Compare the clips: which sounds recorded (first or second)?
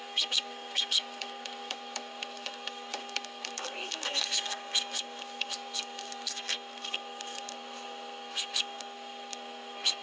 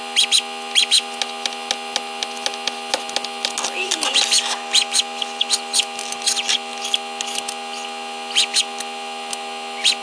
second